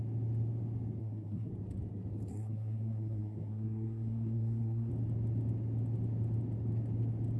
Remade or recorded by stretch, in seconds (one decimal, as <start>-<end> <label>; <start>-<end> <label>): 0.0-1.0 recorded; 1.0-1.5 remade; 1.5-2.3 recorded; 2.3-4.9 remade; 4.9-7.4 recorded